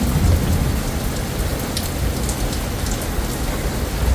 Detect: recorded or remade recorded